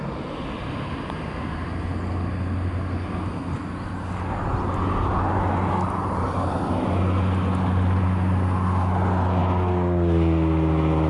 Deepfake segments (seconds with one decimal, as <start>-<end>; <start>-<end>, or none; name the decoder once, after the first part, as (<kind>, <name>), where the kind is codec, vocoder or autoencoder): none